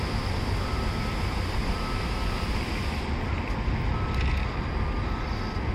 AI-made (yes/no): no